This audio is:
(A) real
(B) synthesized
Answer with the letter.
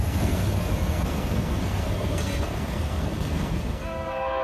B